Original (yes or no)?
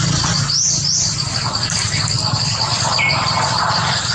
yes